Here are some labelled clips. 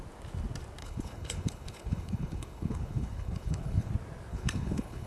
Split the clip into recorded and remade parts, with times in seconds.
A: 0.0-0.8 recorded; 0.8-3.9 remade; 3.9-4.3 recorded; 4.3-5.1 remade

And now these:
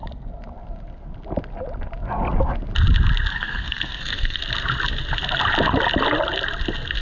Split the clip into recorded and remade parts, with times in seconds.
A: 0.0-3.3 recorded; 3.3-4.4 remade; 4.4-7.0 recorded

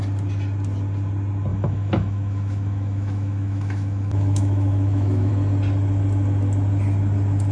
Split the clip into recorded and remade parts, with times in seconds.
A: 0.0-1.5 recorded; 1.5-5.3 remade; 5.3-7.5 recorded